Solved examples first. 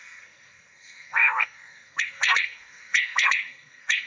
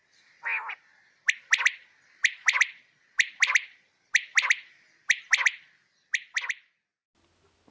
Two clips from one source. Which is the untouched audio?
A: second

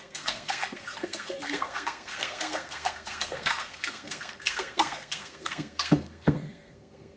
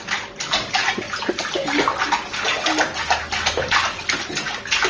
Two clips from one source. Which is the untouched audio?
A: second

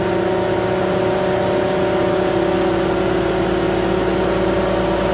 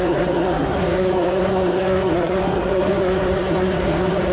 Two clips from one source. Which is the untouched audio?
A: first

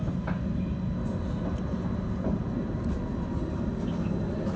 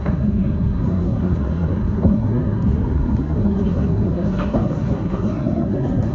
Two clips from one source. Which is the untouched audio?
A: first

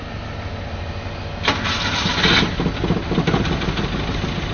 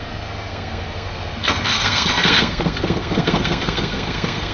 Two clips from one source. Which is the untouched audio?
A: first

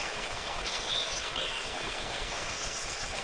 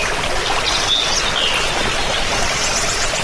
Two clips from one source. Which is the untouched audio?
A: second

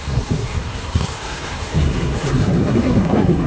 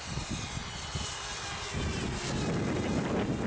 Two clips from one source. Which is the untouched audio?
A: second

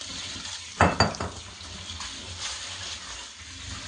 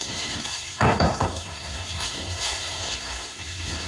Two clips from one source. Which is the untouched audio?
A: first